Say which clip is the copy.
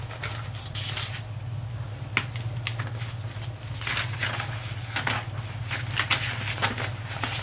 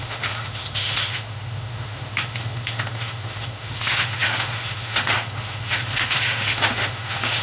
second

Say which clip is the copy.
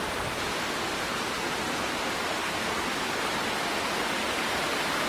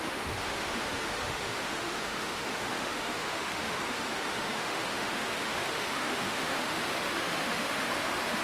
second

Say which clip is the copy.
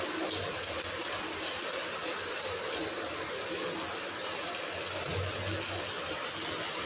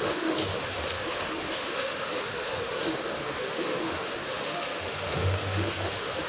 second